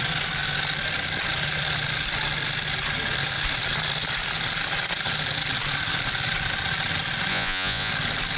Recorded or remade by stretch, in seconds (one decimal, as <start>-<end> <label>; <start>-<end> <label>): 0.0-7.3 recorded; 7.3-7.9 remade; 7.9-8.4 recorded